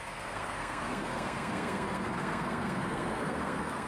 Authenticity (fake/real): fake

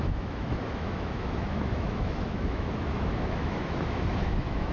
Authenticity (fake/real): fake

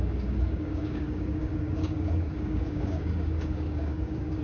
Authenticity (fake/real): fake